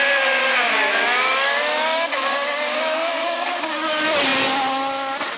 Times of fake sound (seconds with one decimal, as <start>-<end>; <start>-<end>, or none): 0.4-3.6

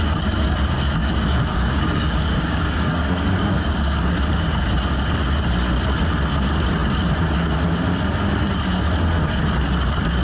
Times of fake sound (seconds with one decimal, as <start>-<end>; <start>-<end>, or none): 1.0-4.1

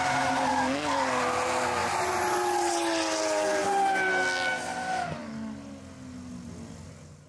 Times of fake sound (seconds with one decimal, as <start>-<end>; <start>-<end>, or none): 0.5-1.2

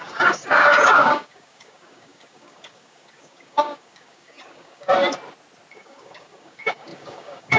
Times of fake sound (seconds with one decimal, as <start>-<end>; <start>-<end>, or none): 0.0-4.9; 5.7-7.6

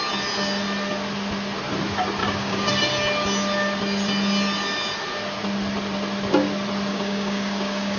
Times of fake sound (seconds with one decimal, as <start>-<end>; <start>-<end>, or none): 2.2-2.7; 6.9-8.0

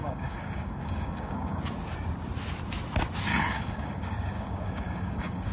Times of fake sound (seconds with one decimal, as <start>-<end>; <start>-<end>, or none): 0.0-1.6; 3.3-5.5

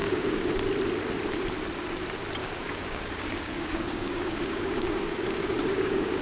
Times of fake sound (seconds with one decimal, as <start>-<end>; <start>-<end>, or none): 0.0-0.5; 2.4-6.2

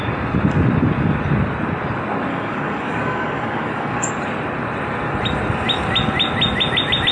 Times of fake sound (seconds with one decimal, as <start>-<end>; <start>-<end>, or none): 2.3-4.1